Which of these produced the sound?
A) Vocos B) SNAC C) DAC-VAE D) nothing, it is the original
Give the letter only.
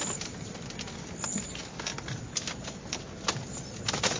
D